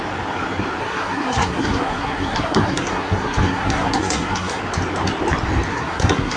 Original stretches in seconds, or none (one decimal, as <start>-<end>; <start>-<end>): 0.0-0.8; 4.6-5.7